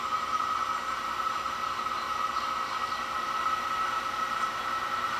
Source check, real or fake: fake